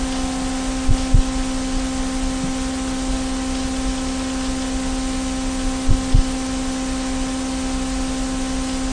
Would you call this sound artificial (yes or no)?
no